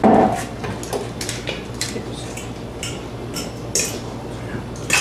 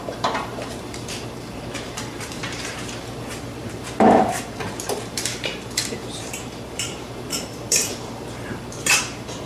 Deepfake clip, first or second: second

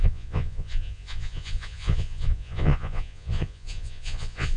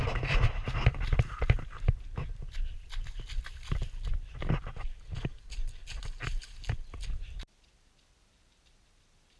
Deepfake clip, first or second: first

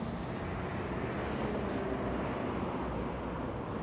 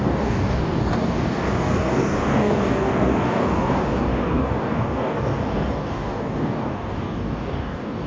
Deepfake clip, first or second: second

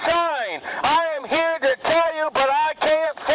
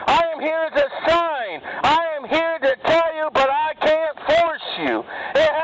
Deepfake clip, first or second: first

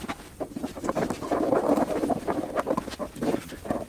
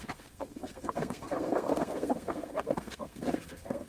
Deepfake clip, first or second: second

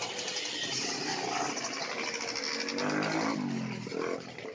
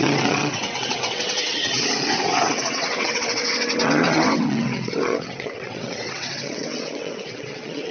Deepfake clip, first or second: second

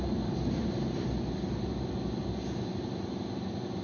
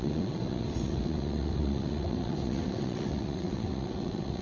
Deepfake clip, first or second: second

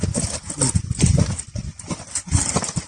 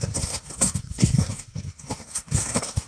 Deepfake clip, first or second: second